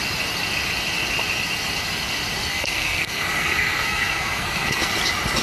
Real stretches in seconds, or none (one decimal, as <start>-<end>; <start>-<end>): 0.0-2.5; 4.9-5.4